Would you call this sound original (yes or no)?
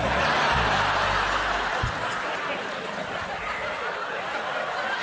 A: yes